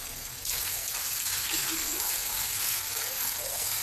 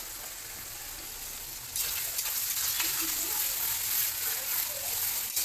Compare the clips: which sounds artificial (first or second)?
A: first